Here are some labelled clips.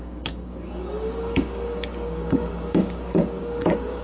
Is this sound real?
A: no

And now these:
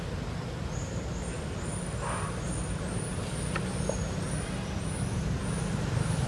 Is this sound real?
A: yes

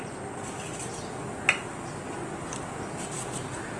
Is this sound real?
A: yes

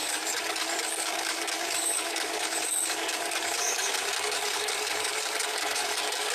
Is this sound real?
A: no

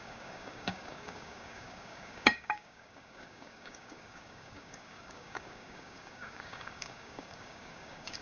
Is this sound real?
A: no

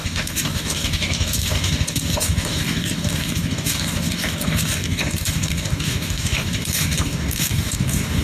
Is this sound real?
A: no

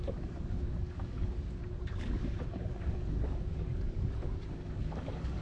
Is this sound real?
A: no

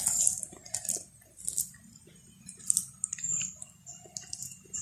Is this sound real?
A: yes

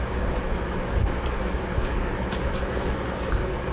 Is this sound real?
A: no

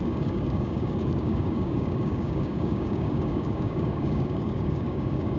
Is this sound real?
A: no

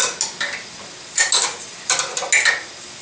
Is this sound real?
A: yes